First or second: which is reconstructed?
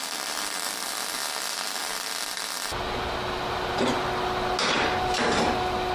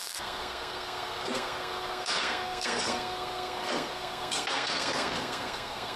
second